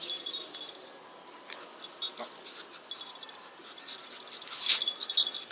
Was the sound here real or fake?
real